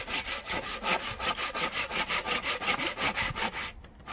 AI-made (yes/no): no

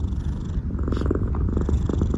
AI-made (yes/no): no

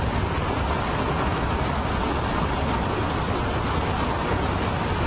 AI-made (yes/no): no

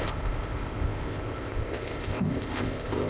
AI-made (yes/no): yes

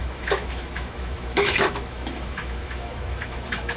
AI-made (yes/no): yes